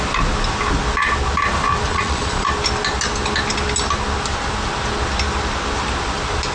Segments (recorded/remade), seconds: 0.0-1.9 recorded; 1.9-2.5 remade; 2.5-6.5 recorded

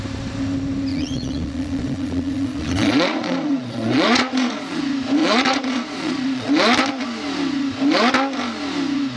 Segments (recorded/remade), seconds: 0.0-0.9 recorded; 0.9-4.8 remade; 4.8-5.2 recorded; 5.2-6.5 remade; 6.5-9.2 recorded

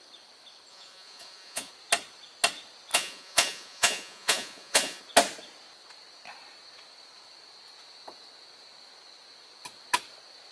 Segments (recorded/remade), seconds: 0.0-0.7 recorded; 0.7-1.7 remade; 1.7-2.9 recorded; 2.9-5.0 remade; 5.0-10.5 recorded

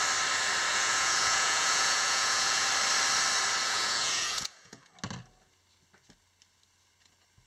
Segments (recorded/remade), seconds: 0.0-0.7 recorded; 0.7-2.7 remade; 2.7-3.6 recorded; 3.6-4.9 remade; 4.9-7.5 recorded

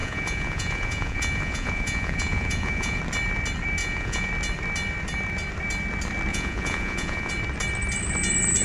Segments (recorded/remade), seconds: 0.0-3.0 remade; 3.0-3.8 recorded; 3.8-4.3 remade; 4.3-6.3 recorded; 6.3-7.3 remade; 7.3-8.6 recorded

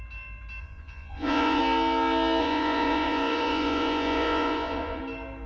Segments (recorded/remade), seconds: 0.0-0.6 recorded; 0.6-1.6 remade; 1.6-2.4 recorded; 2.4-5.0 remade; 5.0-5.5 recorded

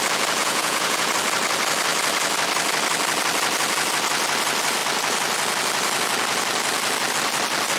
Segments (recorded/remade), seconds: 0.0-0.4 recorded; 0.4-1.1 remade; 1.1-7.8 recorded

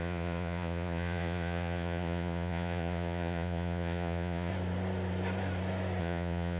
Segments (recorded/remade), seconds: 0.0-4.5 remade; 4.5-6.0 recorded; 6.0-6.6 remade